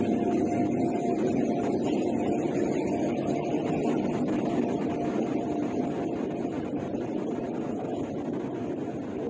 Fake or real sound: real